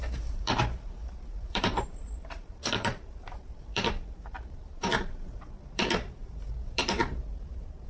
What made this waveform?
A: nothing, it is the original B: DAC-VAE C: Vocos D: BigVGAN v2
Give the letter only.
D